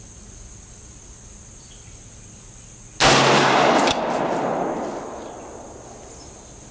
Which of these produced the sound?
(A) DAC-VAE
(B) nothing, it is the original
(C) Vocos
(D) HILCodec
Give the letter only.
B